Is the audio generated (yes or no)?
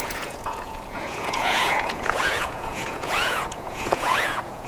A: yes